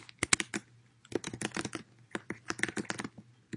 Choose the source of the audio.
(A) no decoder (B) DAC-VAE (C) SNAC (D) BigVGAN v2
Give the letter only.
A